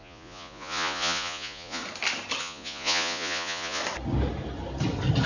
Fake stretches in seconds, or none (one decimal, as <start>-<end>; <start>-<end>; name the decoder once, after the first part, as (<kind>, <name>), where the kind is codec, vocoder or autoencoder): 0.0-1.8 (vocoder, Vocos); 2.4-3.8